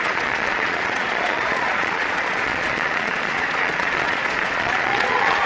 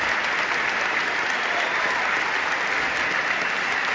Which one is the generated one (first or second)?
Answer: first